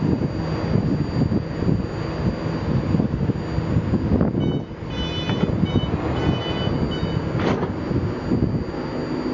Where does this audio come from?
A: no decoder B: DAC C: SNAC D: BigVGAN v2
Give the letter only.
A